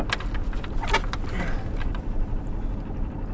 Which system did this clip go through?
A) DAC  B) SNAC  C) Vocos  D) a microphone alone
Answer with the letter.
D